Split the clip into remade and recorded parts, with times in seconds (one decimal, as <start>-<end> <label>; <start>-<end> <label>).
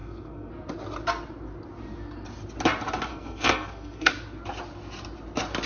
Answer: 0.0-0.5 remade; 0.5-3.1 recorded; 3.1-4.1 remade; 4.1-5.7 recorded